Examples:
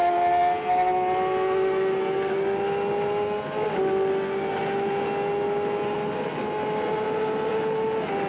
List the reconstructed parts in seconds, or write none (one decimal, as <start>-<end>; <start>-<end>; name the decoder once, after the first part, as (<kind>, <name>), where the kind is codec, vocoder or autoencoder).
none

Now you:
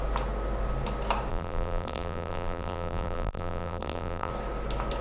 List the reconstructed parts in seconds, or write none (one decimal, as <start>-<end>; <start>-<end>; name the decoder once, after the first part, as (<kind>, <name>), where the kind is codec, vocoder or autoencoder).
1.3-4.3 (vocoder, BigVGAN v2)

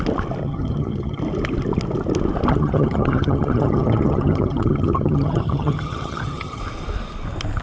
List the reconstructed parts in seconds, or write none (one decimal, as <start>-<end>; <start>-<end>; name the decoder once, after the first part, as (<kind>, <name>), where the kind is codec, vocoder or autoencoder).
0.4-1.2 (vocoder, HiFi-GAN); 2.5-6.6